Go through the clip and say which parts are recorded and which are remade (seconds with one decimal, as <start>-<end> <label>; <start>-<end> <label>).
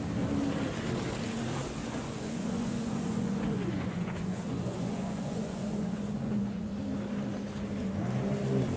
0.0-1.8 recorded; 1.8-6.7 remade; 6.7-8.8 recorded